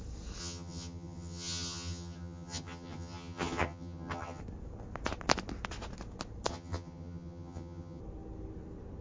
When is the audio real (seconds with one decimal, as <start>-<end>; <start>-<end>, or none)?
0.0-0.4; 4.4-6.5; 8.0-9.0